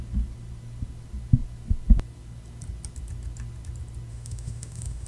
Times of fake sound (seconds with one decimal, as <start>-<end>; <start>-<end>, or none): 4.1-5.1